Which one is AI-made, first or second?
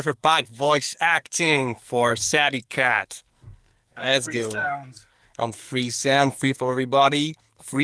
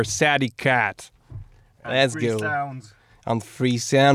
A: first